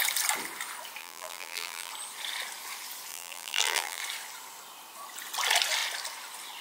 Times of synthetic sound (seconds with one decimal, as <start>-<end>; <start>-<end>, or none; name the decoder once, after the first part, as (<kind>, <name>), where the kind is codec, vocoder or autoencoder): 1.0-1.9 (vocoder, BigVGAN v2); 3.1-4.0